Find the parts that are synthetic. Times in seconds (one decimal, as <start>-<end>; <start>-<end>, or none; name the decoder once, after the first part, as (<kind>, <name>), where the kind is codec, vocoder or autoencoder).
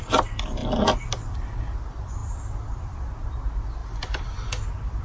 none